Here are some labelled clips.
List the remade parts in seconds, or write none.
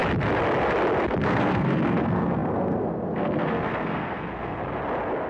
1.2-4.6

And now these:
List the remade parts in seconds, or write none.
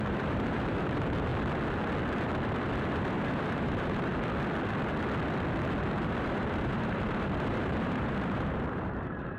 0.0-1.3; 2.9-4.1; 5.8-9.4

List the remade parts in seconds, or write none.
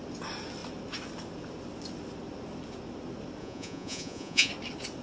3.4-4.5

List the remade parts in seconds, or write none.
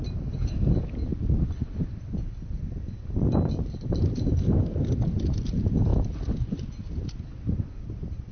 none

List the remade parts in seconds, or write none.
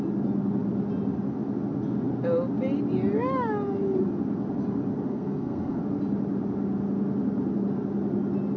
5.1-5.8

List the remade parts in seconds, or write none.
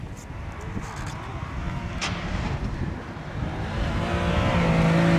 2.0-3.9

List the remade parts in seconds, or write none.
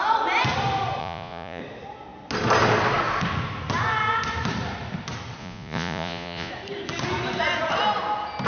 1.0-1.6; 5.4-6.5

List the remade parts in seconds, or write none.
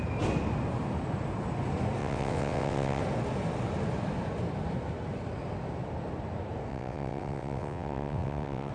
2.0-3.0; 6.7-8.7